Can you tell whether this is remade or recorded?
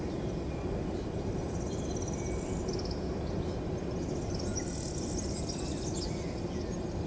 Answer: recorded